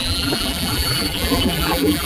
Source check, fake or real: fake